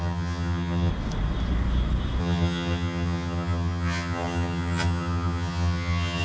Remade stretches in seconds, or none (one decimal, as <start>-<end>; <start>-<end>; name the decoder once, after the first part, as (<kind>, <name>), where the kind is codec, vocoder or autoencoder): 0.0-0.9 (vocoder, HiFi-GAN); 2.2-6.2